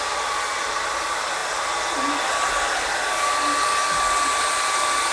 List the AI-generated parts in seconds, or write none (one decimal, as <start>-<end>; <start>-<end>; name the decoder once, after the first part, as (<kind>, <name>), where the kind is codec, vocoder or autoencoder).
none